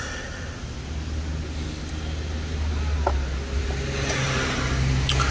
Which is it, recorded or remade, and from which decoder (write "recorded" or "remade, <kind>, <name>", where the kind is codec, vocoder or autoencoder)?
recorded